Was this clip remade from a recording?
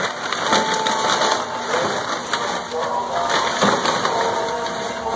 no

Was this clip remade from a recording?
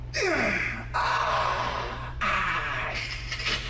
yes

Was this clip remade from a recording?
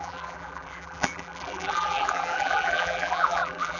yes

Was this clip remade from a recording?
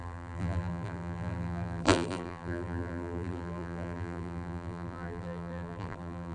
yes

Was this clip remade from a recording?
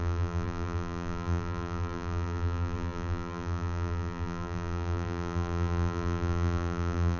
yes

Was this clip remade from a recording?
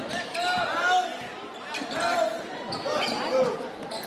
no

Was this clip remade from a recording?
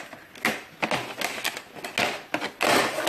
no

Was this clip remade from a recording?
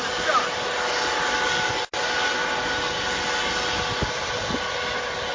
no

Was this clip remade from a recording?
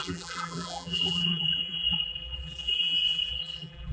yes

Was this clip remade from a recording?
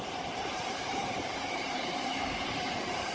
yes